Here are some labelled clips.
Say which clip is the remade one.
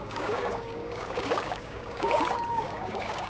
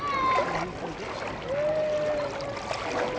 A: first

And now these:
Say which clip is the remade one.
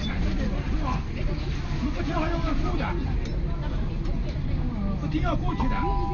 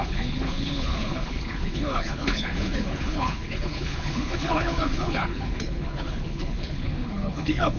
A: second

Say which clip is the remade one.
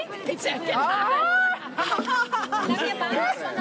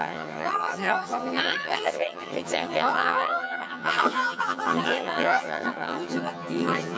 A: second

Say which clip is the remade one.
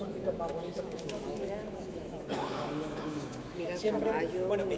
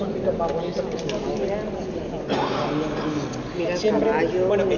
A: first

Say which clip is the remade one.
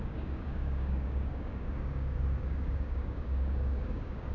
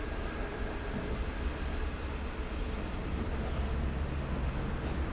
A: first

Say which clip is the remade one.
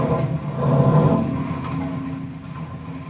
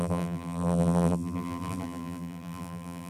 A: second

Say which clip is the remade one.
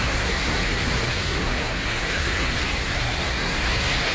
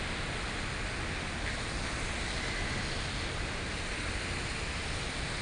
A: first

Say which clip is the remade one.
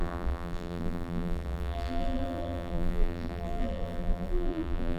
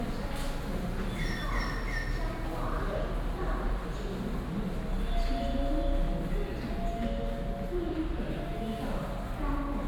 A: first